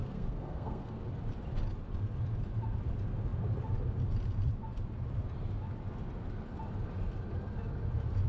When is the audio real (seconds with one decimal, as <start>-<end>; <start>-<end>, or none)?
0.9-8.3